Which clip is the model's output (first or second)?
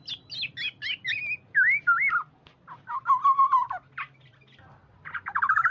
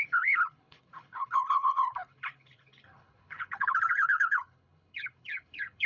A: second